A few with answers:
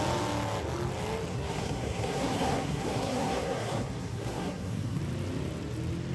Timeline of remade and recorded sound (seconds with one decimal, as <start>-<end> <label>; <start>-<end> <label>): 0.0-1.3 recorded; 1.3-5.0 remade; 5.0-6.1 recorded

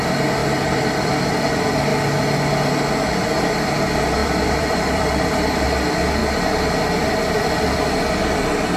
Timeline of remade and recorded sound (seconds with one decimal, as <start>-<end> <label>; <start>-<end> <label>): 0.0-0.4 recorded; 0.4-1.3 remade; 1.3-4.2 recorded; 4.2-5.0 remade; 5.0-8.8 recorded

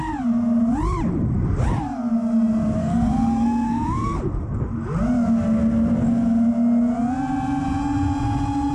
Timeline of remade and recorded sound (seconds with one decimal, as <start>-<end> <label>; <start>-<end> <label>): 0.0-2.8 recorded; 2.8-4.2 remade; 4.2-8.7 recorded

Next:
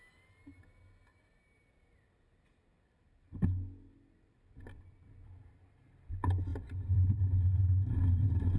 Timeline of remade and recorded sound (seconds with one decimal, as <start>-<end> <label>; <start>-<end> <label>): 0.0-6.5 recorded; 6.5-7.2 remade; 7.2-8.6 recorded